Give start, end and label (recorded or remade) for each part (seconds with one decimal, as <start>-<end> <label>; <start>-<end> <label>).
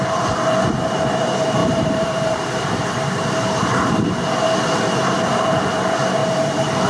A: 0.0-1.6 recorded; 1.6-4.1 remade; 4.1-6.2 recorded; 6.2-6.9 remade